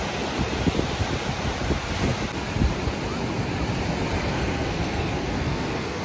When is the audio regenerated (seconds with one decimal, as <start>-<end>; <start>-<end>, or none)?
4.2-6.0